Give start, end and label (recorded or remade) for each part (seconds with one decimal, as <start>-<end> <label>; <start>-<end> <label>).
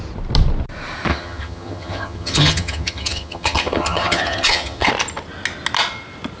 0.0-1.1 recorded; 1.1-4.9 remade; 4.9-6.4 recorded